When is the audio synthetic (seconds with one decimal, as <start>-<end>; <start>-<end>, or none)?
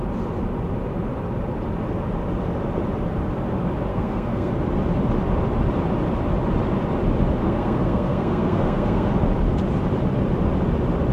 3.9-4.5; 7.4-9.1